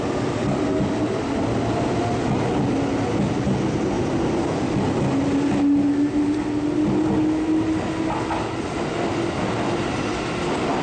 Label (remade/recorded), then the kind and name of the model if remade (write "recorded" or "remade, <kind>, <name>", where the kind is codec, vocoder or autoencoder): recorded